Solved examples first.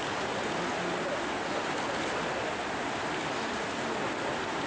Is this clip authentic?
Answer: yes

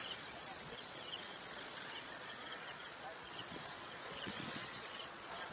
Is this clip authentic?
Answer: no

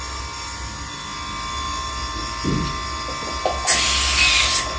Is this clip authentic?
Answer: yes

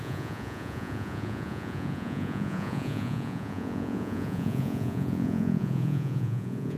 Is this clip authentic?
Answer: no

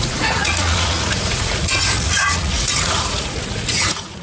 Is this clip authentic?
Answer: no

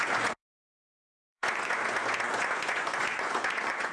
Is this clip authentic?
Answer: no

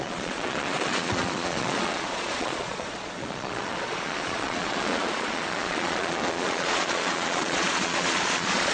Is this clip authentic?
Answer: no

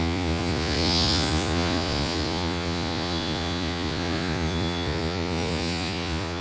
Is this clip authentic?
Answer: no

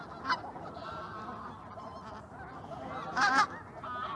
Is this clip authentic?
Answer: yes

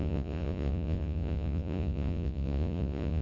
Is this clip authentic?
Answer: no